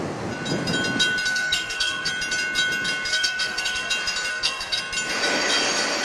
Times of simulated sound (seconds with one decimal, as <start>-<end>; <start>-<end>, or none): 1.3-2.1; 3.1-3.9; 4.3-4.8